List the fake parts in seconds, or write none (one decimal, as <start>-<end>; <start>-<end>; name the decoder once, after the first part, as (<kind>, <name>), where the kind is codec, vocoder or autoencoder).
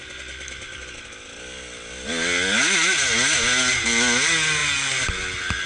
4.6-5.1 (vocoder, BigVGAN v2)